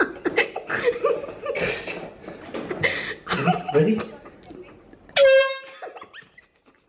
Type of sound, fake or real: real